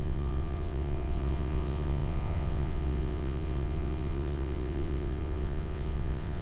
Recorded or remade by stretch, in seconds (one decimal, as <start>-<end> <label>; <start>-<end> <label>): 0.0-6.4 remade

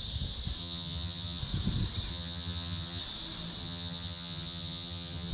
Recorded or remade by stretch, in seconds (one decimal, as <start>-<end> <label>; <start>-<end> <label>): 0.0-0.6 recorded; 0.6-1.4 remade; 1.4-2.1 recorded; 2.1-3.0 remade; 3.0-3.6 recorded; 3.6-5.3 remade

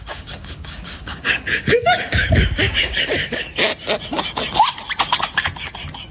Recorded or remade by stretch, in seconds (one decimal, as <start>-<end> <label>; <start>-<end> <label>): 0.0-3.7 remade; 3.7-6.1 recorded